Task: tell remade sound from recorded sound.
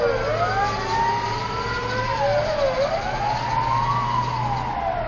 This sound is recorded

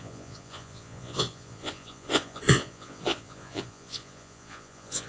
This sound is remade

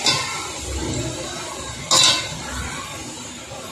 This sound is recorded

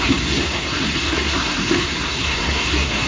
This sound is remade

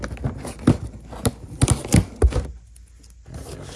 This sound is recorded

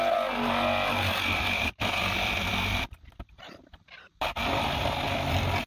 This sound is recorded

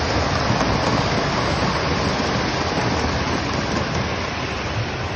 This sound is recorded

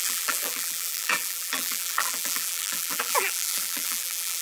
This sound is remade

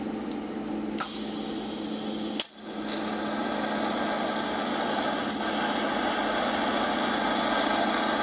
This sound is recorded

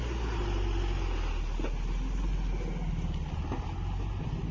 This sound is recorded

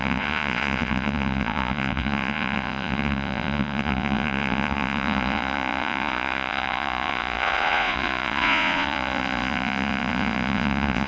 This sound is remade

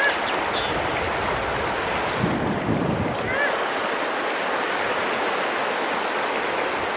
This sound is recorded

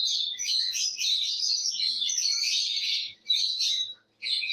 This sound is recorded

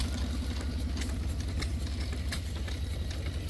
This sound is recorded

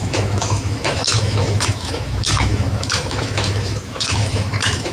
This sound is remade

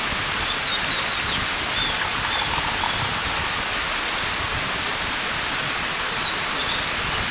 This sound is recorded